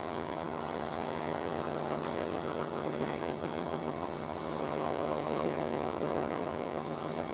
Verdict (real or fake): fake